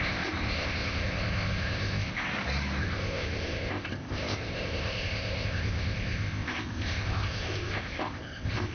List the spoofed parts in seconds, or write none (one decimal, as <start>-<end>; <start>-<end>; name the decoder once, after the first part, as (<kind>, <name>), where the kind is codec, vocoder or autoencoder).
0.0-2.3 (codec, ZipCodec); 2.8-8.7